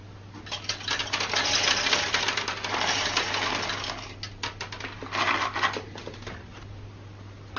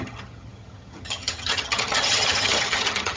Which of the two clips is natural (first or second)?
first